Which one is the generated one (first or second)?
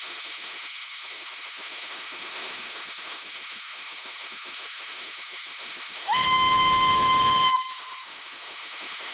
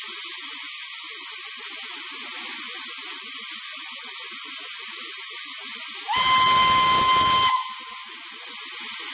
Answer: first